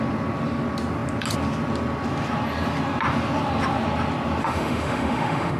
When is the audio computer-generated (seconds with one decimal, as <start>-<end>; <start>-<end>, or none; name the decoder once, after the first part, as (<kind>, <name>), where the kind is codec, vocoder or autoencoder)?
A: 4.4-5.6 (autoencoder, DAC-VAE)